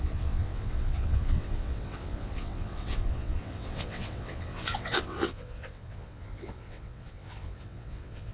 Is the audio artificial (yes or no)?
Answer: yes